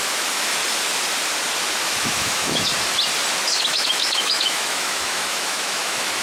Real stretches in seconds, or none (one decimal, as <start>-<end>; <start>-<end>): 0.6-1.8; 2.7-3.4